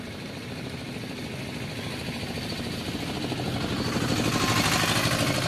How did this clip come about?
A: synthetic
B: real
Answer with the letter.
B